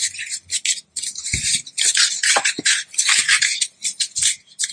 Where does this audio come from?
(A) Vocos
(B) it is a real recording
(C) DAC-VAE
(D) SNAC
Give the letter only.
B